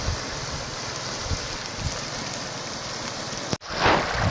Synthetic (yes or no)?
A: no